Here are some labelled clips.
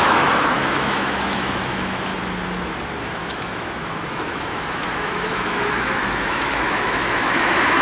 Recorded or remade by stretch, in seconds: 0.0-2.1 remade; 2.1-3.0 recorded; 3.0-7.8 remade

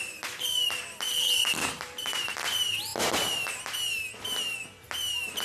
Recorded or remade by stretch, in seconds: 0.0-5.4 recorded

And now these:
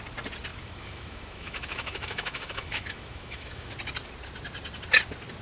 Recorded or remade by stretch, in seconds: 0.0-0.5 recorded; 0.5-3.7 remade; 3.7-5.4 recorded

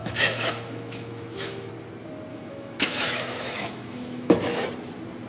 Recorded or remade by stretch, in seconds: 0.0-1.7 remade; 1.7-2.3 recorded; 2.3-4.7 remade; 4.7-5.3 recorded